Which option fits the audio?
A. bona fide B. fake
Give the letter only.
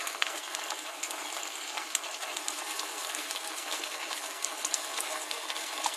B